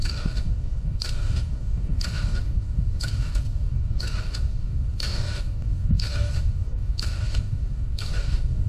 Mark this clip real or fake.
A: fake